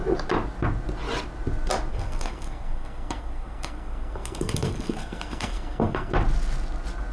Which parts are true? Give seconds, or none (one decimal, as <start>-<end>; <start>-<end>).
0.0-1.9; 6.1-7.1